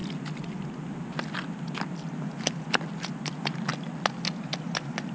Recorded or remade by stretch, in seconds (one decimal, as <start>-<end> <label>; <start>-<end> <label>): 0.0-5.1 recorded